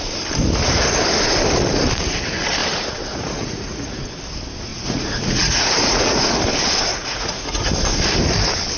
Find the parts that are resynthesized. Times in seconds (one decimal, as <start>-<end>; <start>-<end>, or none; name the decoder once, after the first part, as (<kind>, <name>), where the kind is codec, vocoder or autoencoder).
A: 2.6-4.2 (vocoder, Vocos); 4.7-6.4; 6.9-7.7